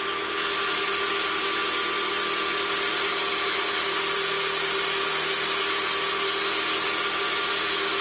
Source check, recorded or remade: recorded